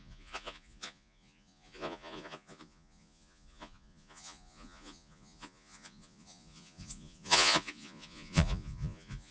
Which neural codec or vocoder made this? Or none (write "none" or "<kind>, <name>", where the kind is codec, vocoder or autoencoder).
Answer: vocoder, Vocos